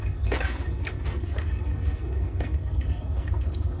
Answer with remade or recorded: remade